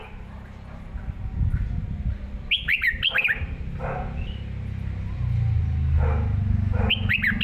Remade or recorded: recorded